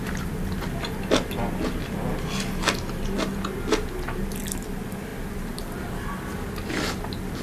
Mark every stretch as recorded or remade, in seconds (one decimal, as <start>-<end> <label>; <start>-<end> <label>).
0.0-7.4 recorded